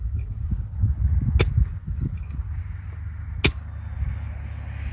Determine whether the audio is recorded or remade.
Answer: recorded